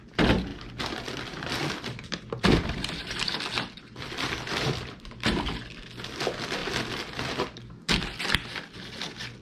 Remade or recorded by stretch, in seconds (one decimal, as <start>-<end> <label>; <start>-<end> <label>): 0.0-0.5 recorded; 0.5-5.5 remade; 5.5-9.4 recorded